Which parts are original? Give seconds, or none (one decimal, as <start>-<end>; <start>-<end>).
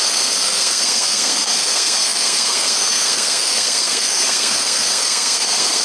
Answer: none